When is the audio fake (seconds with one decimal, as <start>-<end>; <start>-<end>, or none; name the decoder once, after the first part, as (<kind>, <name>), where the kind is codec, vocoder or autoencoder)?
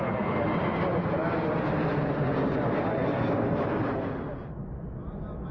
none